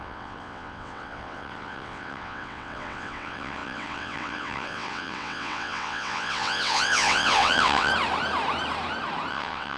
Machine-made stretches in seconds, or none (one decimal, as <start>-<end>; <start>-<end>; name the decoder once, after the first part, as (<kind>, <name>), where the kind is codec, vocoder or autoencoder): 0.0-7.9 (vocoder, WaveNeXt); 9.3-9.8